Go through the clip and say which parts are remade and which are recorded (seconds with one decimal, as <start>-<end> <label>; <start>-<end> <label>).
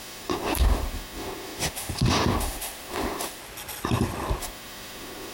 0.0-3.4 remade; 3.4-4.4 recorded; 4.4-5.3 remade